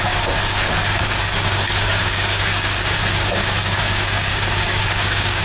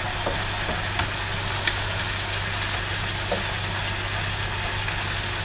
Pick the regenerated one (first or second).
first